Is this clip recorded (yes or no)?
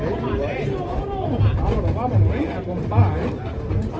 yes